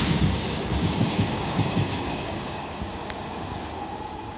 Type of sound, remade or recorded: remade